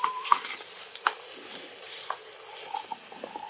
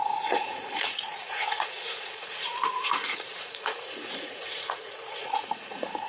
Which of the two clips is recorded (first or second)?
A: first